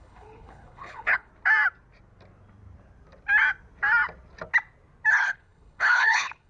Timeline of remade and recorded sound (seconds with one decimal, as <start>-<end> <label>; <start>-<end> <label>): 0.0-1.3 remade; 1.3-5.1 recorded; 5.1-6.5 remade